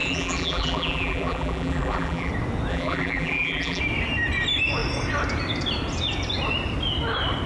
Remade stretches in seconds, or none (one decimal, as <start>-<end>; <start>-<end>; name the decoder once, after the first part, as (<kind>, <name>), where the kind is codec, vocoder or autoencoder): 0.0-2.3 (vocoder, BigVGAN v2); 2.7-3.8